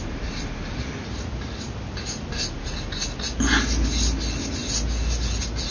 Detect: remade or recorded recorded